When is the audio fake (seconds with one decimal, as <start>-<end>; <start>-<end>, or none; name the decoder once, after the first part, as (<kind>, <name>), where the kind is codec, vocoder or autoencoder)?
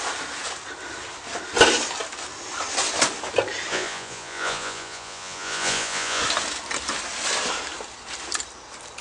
3.7-6.2 (vocoder, Vocos)